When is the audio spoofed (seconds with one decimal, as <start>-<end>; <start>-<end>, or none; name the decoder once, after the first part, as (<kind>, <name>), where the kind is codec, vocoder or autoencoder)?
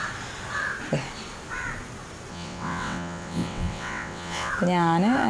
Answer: 2.3-4.5 (vocoder, WaveNeXt)